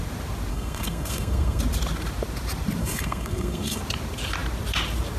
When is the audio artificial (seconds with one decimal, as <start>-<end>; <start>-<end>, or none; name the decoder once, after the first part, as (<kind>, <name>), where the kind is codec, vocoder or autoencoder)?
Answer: 0.5-1.6 (codec, SNAC); 2.8-3.8